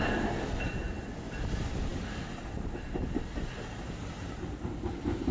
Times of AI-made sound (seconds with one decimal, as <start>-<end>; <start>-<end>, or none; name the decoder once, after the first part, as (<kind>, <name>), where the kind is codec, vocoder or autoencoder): none